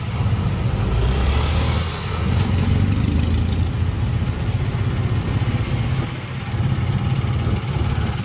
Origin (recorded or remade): recorded